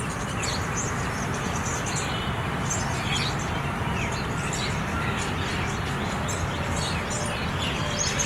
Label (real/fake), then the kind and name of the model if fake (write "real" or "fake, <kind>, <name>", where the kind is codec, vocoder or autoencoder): real